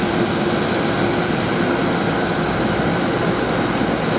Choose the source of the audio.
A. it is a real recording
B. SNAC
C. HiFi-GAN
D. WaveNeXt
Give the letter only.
A